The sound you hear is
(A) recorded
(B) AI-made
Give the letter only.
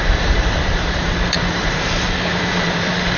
B